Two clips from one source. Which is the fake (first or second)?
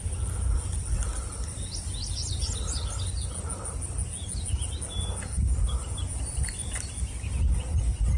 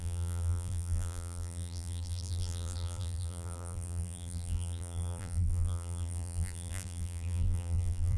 second